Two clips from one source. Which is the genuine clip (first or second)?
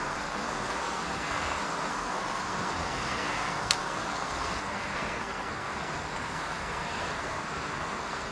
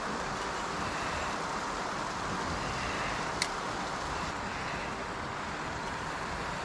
second